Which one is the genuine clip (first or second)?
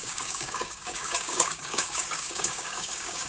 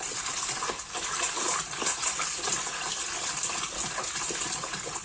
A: second